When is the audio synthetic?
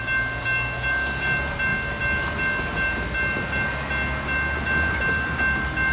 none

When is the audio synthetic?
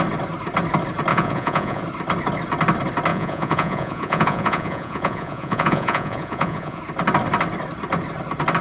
1.1-1.8 (vocoder, Vocos); 3.1-6.8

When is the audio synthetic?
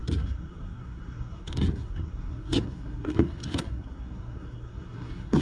0.0-5.4 (codec, SNAC)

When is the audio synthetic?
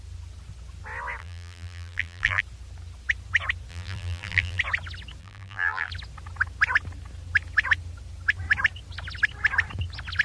1.2-2.4 (vocoder, BigVGAN v2); 3.7-4.6; 5.2-5.9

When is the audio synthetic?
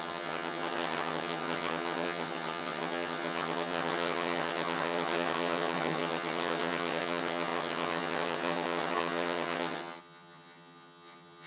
0.0-11.5 (vocoder, HiFi-GAN)